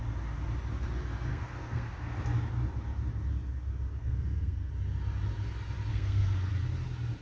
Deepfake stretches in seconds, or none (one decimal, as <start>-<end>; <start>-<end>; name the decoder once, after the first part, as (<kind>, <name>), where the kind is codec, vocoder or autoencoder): 1.3-2.2 (codec, SNAC); 4.0-4.7; 5.9-6.5

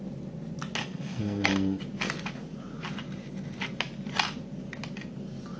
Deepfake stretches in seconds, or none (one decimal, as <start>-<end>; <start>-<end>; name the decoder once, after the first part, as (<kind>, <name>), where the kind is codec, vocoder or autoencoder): 0.8-1.8 (codec, SNAC)

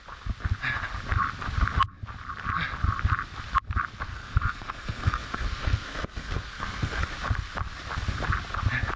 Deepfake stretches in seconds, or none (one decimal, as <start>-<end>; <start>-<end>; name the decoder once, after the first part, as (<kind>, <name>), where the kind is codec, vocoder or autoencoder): 4.1-7.1 (codec, SNAC)

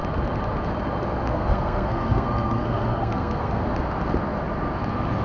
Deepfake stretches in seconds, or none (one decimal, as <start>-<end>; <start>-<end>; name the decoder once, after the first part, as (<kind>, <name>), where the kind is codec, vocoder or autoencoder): 1.3-3.6 (codec, SNAC)

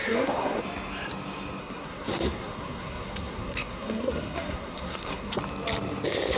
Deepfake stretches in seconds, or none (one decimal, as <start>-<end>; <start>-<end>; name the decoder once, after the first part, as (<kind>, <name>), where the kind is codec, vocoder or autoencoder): 0.0-0.6 (codec, SNAC); 1.6-5.4

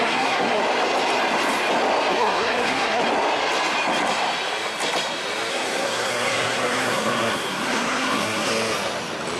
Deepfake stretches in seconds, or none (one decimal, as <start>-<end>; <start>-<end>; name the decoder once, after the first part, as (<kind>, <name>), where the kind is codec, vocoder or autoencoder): 0.0-0.6 (codec, SNAC); 2.1-3.0; 5.5-8.5

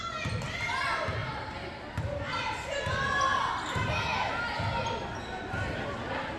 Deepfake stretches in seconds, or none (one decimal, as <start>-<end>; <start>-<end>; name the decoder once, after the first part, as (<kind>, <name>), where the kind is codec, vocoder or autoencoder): none